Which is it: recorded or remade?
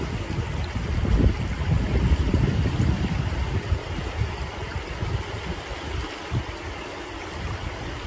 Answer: recorded